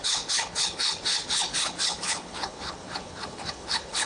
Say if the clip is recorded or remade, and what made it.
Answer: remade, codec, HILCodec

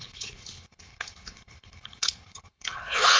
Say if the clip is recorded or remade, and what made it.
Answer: remade, codec, HILCodec